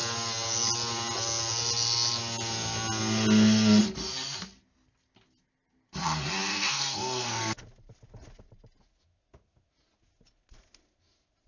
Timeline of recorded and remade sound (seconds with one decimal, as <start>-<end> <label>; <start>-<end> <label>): 0.0-6.5 recorded; 6.5-7.6 remade; 7.6-11.5 recorded